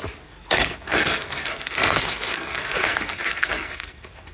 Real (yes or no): no